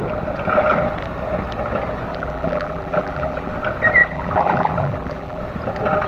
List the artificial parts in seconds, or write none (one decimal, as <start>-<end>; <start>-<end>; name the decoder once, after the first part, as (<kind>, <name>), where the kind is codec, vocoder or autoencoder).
2.1-3.5 (vocoder, BigVGAN v2); 4.0-5.4